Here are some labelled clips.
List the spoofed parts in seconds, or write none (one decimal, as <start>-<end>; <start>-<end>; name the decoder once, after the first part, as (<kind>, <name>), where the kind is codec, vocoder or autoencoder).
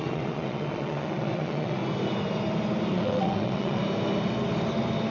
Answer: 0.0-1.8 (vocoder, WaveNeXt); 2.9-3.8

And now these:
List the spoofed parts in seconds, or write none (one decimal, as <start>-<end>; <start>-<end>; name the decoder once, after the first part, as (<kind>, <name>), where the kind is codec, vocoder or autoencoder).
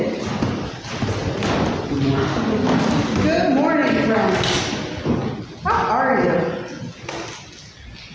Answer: none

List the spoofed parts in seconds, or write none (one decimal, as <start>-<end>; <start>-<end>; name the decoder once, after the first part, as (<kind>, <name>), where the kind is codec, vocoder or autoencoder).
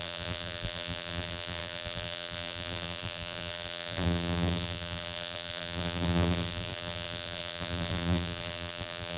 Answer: 0.0-9.2 (vocoder, BigVGAN v2)